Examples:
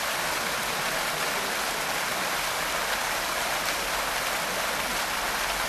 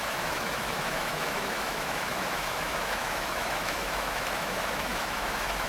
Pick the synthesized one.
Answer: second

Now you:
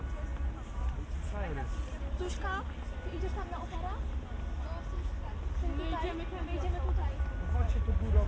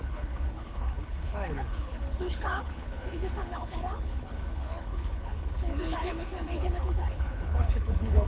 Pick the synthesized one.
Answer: second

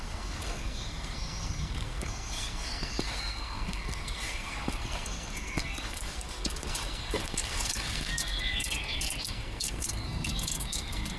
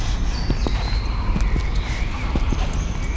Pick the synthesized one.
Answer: first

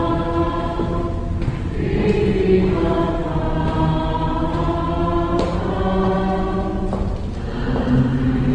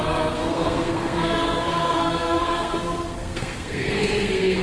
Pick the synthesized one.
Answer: second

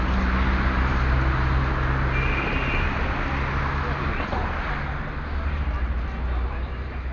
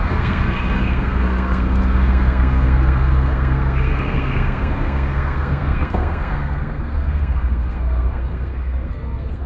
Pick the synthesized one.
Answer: second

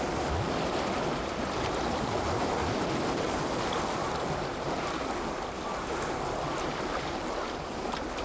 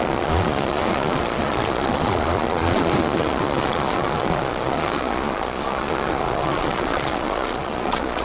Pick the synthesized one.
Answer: second